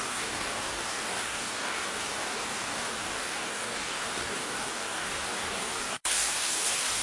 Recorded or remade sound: remade